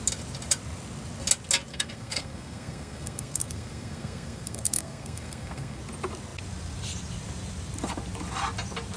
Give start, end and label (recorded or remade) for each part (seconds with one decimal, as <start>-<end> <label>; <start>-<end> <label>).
0.0-1.7 recorded; 1.7-5.8 remade; 5.8-9.0 recorded